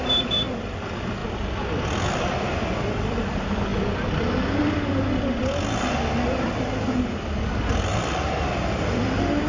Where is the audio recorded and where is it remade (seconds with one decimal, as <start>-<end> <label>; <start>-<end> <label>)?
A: 0.0-1.2 remade; 1.2-2.1 recorded; 2.1-3.7 remade; 3.7-6.4 recorded; 6.4-9.5 remade